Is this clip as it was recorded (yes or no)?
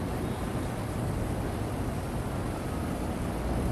yes